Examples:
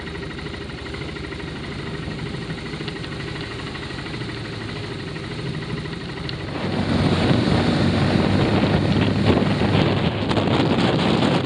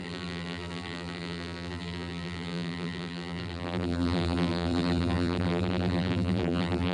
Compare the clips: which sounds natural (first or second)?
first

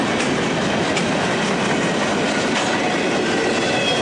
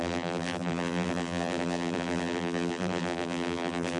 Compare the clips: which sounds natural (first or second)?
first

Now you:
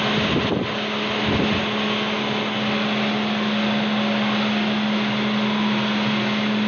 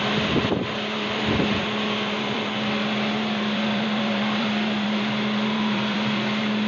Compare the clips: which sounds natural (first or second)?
first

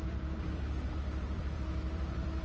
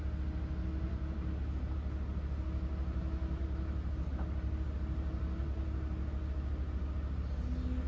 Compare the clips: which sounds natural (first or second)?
second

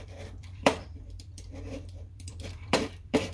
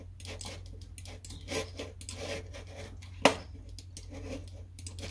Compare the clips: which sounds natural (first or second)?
second